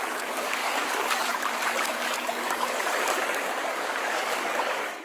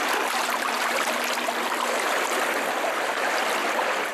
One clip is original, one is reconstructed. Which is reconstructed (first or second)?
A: first